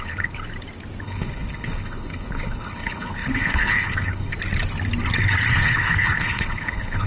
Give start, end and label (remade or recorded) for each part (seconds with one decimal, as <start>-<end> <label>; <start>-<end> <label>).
0.0-0.4 remade; 0.4-1.0 recorded; 1.0-4.3 remade; 4.3-5.5 recorded; 5.5-7.1 remade